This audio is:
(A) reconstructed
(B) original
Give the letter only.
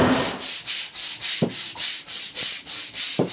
B